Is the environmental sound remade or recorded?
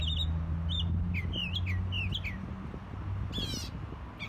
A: recorded